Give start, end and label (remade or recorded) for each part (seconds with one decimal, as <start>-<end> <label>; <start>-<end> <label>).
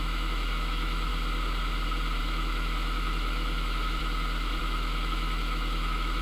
0.0-1.1 remade; 1.1-2.2 recorded; 2.2-4.0 remade; 4.0-4.6 recorded; 4.6-6.2 remade